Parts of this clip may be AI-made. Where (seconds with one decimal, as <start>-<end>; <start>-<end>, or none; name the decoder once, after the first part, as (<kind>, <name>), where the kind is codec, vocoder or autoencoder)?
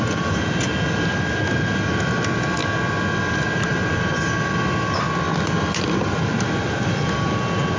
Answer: none